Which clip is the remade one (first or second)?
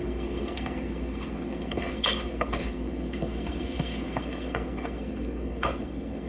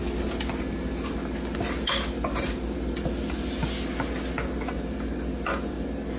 first